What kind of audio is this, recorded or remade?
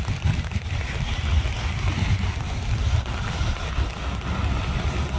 recorded